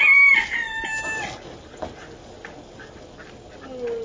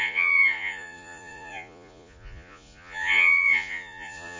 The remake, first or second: second